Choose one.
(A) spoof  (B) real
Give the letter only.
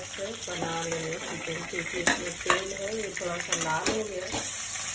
B